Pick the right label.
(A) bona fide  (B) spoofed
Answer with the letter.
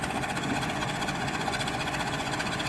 B